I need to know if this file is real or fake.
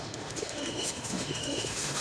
fake